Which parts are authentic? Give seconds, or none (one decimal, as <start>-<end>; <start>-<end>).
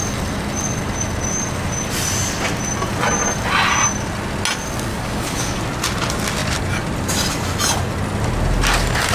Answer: 0.0-4.9; 5.6-9.1